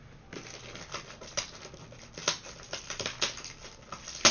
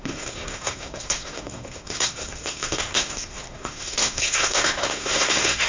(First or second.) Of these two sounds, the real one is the first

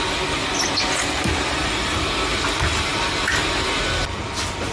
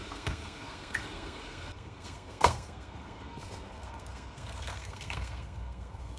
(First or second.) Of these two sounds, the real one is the first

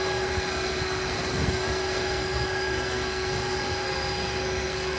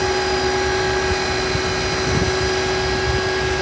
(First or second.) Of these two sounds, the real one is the second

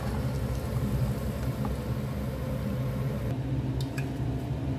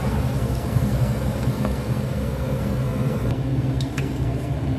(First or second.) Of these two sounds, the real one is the first